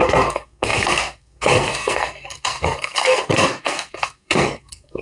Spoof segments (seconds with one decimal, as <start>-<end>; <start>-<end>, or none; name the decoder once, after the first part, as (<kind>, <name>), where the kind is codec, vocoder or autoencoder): 0.0-5.0 (codec, SNAC)